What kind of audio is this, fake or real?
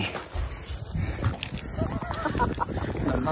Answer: real